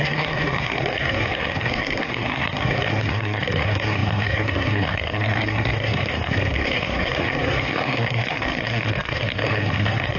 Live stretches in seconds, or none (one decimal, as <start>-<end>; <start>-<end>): none